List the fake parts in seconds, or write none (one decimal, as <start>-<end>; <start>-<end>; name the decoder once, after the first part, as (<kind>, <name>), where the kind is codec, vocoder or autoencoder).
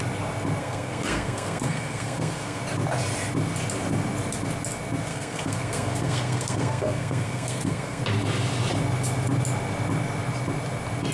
0.6-2.6 (codec, SNAC); 5.1-8.0